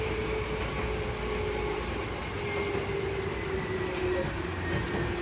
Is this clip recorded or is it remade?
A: remade